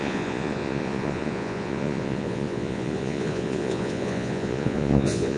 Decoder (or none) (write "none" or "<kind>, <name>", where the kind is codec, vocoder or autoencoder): vocoder, Vocos